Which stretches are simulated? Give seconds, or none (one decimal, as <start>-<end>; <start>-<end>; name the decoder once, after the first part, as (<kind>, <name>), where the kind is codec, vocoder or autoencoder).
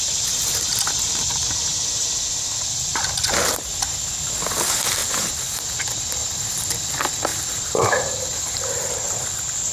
5.0-5.6 (vocoder, BigVGAN v2); 7.3-9.2